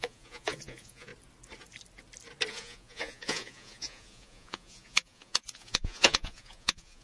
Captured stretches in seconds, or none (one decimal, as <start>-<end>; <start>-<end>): 1.1-2.5